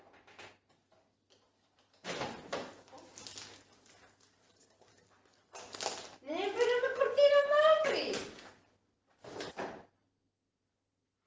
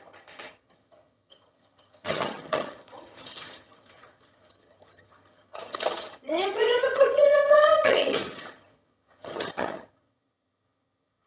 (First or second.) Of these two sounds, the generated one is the second